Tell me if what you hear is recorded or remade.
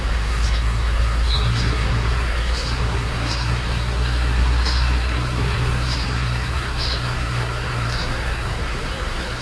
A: remade